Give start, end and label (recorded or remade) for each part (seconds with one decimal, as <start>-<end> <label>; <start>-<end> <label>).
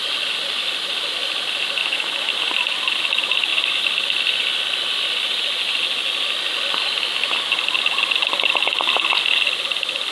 0.0-1.8 recorded; 1.8-2.5 remade; 2.5-10.1 recorded